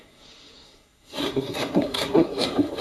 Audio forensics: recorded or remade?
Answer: remade